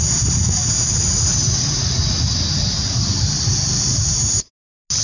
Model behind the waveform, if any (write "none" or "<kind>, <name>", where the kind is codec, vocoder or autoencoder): none